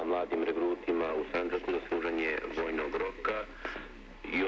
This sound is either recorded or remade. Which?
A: recorded